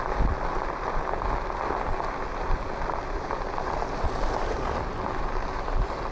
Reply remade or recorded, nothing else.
recorded